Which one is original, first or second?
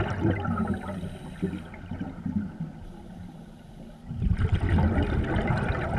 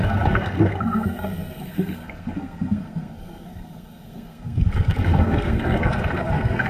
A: first